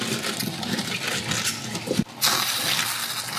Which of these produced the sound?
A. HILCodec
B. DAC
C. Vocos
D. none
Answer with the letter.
D